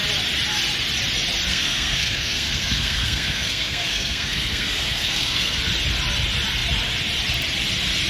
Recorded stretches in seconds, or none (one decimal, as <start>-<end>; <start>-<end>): 0.0-1.5; 5.6-8.1